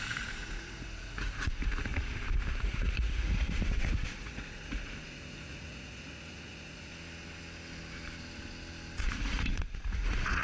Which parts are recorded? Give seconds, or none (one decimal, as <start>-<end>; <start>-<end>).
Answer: 1.9-2.6; 6.9-9.0